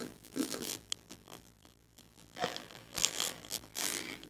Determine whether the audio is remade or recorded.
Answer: remade